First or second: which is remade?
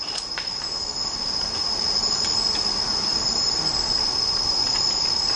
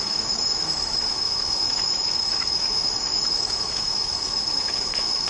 second